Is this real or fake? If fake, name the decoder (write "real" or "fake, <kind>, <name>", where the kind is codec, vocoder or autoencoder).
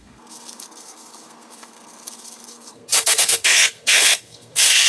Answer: fake, codec, SNAC